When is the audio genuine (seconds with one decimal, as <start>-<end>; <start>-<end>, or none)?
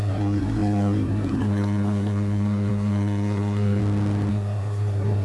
3.8-4.3